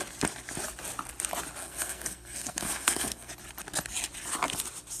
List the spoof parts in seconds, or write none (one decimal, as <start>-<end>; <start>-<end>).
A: 1.6-3.3